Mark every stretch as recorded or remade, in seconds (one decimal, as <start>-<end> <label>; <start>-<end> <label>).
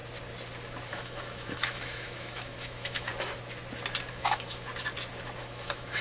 0.0-0.9 recorded; 0.9-3.1 remade; 3.1-4.1 recorded; 4.1-4.7 remade; 4.7-5.4 recorded; 5.4-6.0 remade